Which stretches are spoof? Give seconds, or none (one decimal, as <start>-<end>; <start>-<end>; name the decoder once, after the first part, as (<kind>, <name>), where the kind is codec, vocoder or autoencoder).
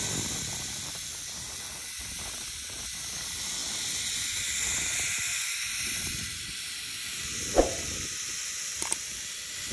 none